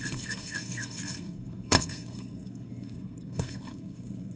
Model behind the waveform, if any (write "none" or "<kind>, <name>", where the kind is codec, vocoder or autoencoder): codec, SNAC